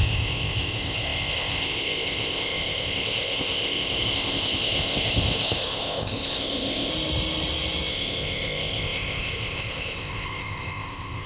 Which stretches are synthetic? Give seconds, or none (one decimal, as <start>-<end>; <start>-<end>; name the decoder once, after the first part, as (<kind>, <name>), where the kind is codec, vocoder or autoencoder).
0.0-6.9 (codec, ZipCodec); 7.9-11.3